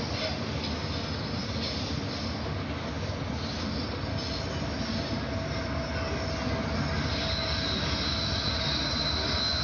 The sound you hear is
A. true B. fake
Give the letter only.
A